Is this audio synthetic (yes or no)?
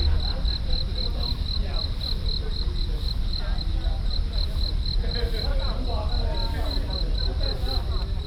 no